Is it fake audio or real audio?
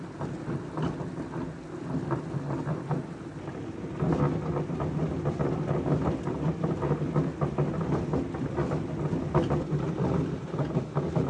real